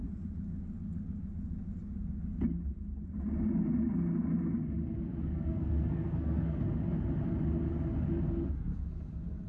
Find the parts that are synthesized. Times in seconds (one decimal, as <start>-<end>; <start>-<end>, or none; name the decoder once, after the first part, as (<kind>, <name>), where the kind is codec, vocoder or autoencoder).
5.2-6.6 (codec, SNAC)